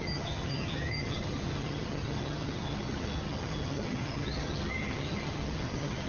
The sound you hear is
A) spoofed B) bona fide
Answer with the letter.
A